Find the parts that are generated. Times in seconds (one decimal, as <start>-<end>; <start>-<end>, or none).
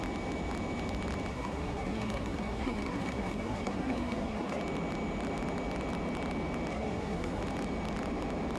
1.3-4.6; 6.7-7.4